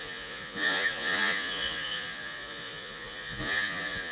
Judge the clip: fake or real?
fake